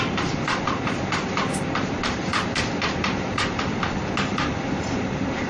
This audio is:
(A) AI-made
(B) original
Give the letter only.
A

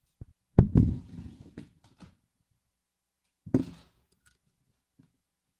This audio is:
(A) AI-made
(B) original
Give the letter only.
A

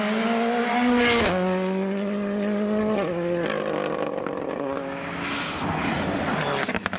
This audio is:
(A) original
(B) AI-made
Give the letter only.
A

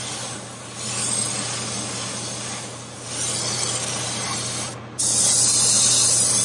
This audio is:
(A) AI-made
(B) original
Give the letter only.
B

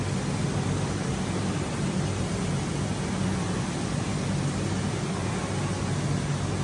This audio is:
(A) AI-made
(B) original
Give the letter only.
B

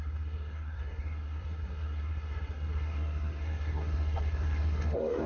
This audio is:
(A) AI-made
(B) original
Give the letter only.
A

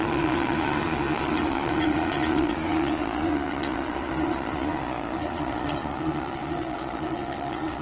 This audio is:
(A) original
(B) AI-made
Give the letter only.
B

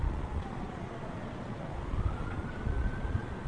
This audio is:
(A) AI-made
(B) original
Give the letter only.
A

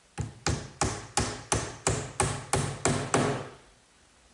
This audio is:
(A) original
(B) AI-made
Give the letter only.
A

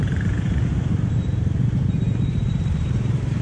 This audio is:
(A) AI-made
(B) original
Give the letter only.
A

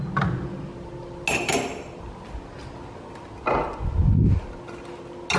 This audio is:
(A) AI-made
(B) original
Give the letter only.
B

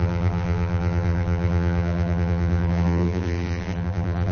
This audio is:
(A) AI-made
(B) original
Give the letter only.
A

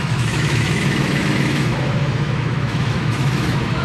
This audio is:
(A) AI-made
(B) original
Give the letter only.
A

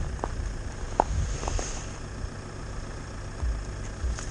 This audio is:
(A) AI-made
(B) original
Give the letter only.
B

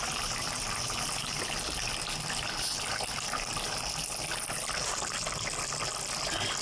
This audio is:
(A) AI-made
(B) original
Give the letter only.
B